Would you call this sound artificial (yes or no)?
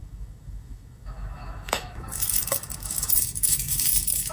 yes